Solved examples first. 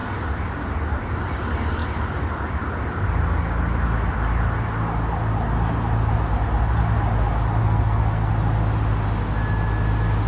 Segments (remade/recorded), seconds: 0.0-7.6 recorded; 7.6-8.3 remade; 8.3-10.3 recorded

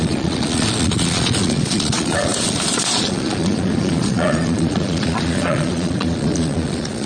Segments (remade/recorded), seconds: 0.0-7.1 remade

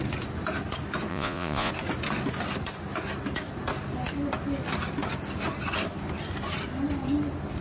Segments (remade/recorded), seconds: 0.0-1.1 recorded; 1.1-1.7 remade; 1.7-7.6 recorded

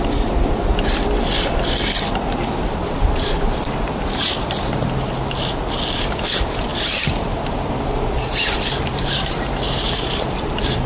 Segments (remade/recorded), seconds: 0.0-2.8 recorded; 2.8-5.1 remade; 5.1-6.7 recorded; 6.7-10.9 remade

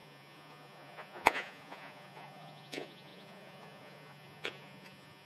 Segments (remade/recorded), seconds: 0.0-5.3 remade

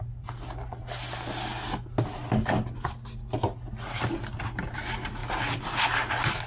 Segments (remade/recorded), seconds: 0.0-6.5 recorded